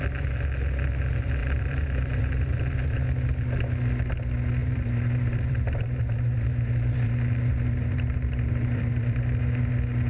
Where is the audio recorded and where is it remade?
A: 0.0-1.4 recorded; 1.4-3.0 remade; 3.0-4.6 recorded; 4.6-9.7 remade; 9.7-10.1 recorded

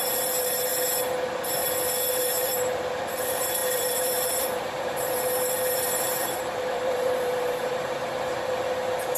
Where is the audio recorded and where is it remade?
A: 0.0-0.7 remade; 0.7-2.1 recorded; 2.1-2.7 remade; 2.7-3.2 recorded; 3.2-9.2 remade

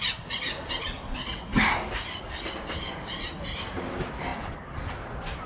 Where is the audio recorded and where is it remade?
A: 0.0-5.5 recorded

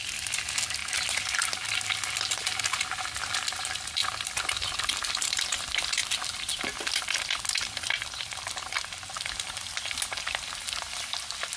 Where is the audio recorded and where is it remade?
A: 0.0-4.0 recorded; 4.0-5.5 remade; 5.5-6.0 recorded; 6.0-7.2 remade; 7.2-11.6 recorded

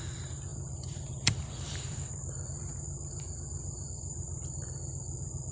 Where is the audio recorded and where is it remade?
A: 0.0-5.5 remade

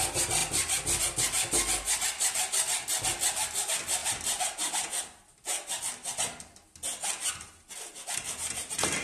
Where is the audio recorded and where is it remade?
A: 0.0-0.4 recorded; 0.4-1.0 remade; 1.0-9.0 recorded

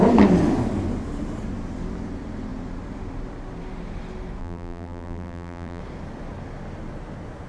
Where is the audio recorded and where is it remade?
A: 0.0-4.4 recorded; 4.4-5.8 remade; 5.8-7.5 recorded

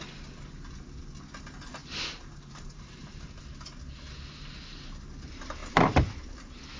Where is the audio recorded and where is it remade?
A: 0.0-1.8 recorded; 1.8-3.4 remade; 3.4-5.6 recorded; 5.6-6.2 remade; 6.2-6.8 recorded